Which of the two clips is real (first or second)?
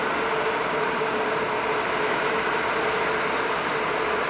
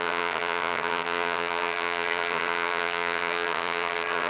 first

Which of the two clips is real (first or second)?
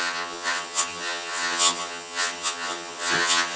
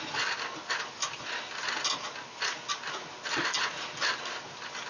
second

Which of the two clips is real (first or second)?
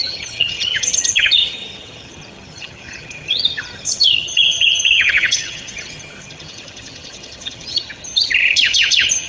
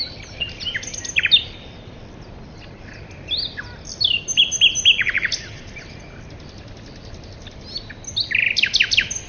second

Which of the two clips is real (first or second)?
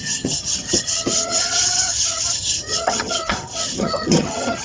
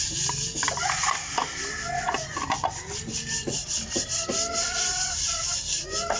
second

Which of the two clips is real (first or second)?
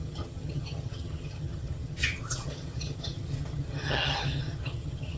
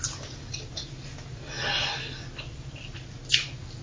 second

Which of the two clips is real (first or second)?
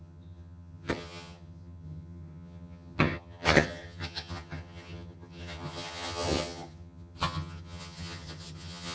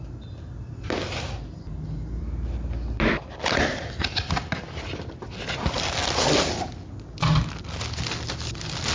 second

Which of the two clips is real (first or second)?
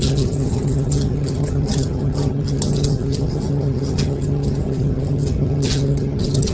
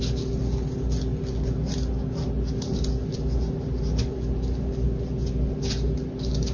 second